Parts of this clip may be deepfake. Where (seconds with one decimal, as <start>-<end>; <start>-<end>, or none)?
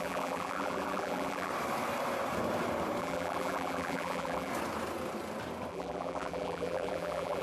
0.0-1.5; 3.0-4.5; 5.7-7.4